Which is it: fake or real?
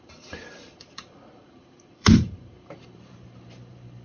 fake